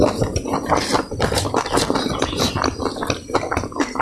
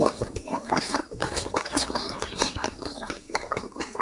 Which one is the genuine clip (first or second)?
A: first